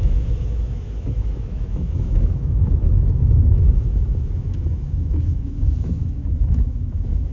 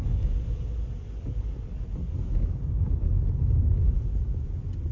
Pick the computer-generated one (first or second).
first